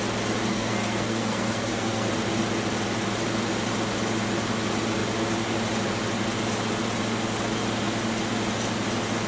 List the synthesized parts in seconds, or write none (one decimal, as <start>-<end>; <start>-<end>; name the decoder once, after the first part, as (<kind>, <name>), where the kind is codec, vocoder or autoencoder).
0.5-2.1 (codec, SNAC)